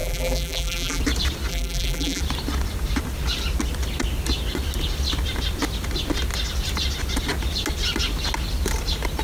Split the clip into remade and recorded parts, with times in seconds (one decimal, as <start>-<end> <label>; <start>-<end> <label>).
0.0-1.0 remade; 1.0-1.5 recorded; 1.5-2.2 remade; 2.2-9.2 recorded